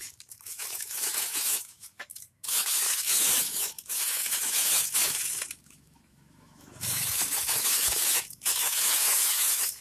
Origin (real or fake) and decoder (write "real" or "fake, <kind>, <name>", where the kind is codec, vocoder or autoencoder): fake, autoencoder, DAC-VAE